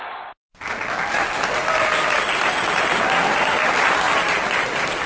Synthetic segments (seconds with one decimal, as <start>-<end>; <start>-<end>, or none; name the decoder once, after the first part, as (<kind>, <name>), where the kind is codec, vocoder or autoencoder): none